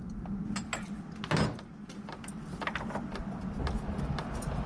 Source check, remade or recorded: recorded